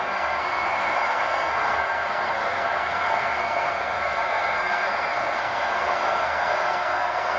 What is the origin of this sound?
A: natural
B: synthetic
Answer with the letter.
B